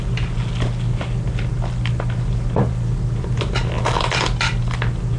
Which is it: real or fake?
real